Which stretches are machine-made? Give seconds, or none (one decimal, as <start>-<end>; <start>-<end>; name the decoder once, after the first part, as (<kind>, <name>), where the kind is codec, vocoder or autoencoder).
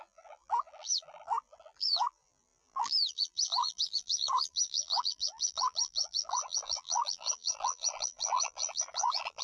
0.0-9.4 (vocoder, BigVGAN v2)